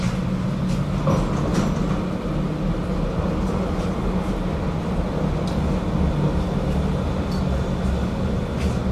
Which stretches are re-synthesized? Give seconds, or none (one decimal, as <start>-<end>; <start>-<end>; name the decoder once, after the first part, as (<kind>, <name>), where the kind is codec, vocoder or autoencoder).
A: none

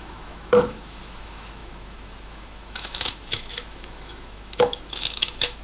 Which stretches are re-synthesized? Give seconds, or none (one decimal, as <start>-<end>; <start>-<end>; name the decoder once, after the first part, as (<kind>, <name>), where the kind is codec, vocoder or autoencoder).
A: 0.0-5.6 (autoencoder, DAC-VAE)

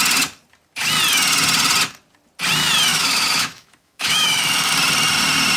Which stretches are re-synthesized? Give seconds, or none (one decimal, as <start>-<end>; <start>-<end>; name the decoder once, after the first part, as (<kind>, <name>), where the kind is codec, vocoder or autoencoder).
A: 2.9-4.7 (autoencoder, DAC-VAE)

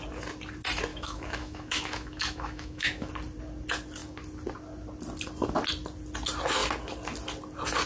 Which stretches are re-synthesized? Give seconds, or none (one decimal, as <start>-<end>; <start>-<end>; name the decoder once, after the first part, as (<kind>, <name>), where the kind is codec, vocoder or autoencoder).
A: 0.9-3.1 (autoencoder, DAC-VAE)